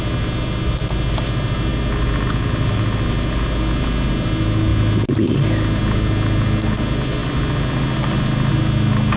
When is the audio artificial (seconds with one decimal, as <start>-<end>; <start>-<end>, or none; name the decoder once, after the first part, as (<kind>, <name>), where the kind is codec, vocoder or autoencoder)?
none